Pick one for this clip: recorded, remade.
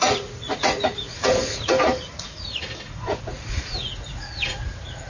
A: remade